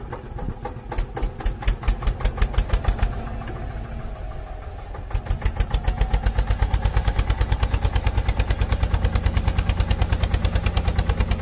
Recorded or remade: recorded